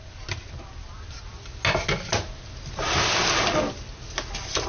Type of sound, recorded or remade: recorded